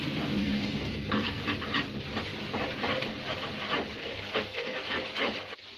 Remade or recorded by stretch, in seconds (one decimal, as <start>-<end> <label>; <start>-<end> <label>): 0.0-0.4 recorded; 0.4-1.4 remade; 1.4-4.0 recorded; 4.0-5.0 remade; 5.0-5.8 recorded